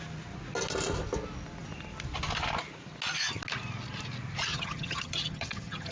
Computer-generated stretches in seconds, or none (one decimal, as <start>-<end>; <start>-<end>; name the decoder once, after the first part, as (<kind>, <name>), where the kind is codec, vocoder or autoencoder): 4.5-5.9 (vocoder, HiFi-GAN)